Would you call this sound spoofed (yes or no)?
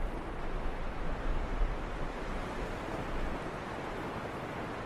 no